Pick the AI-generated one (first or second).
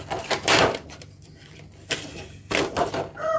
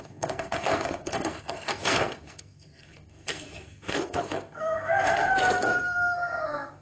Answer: second